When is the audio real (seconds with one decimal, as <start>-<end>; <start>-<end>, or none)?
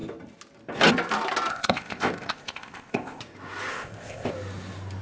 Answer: 0.0-1.5; 3.2-3.7; 4.3-5.0